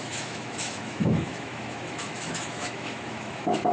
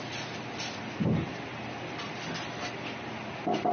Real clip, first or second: second